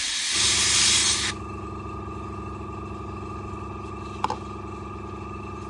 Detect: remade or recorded recorded